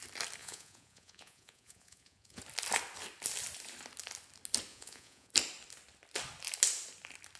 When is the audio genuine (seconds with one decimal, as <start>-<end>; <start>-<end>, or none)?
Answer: 0.0-0.4; 2.4-4.7; 5.3-7.4